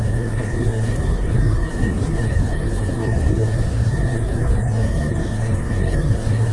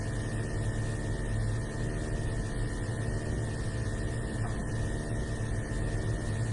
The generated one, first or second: first